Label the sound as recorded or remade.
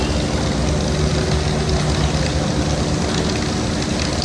recorded